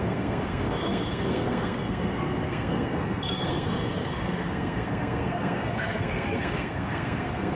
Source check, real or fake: fake